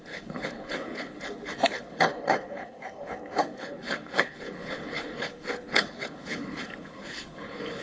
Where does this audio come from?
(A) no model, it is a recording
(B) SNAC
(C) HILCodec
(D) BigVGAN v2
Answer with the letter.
C